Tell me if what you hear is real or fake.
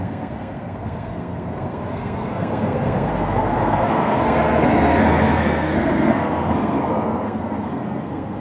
fake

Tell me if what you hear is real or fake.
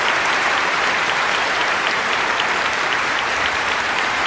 fake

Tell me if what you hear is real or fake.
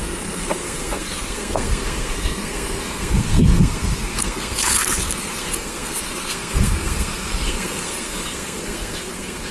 fake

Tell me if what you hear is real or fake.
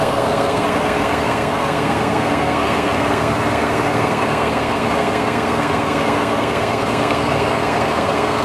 fake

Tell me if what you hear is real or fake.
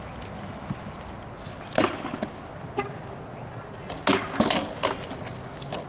real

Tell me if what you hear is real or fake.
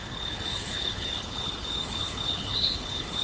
fake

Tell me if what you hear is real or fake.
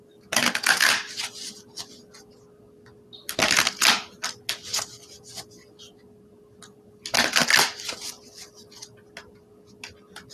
real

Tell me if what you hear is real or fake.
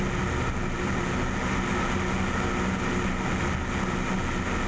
real